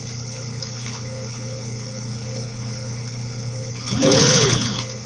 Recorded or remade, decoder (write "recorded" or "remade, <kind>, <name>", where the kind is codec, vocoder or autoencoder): remade, codec, HILCodec